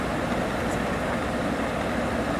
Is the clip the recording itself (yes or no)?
yes